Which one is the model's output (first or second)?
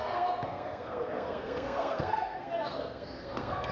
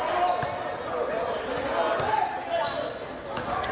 first